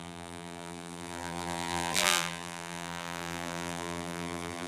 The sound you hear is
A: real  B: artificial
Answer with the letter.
B